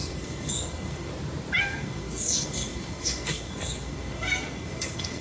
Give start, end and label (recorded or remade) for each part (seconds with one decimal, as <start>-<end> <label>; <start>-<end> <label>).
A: 0.0-1.1 remade; 1.1-1.6 recorded; 1.6-5.2 remade